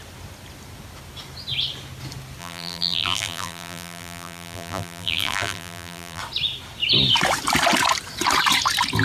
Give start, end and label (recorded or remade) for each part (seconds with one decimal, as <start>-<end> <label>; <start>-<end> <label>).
0.0-2.4 recorded; 2.4-6.2 remade; 6.2-9.0 recorded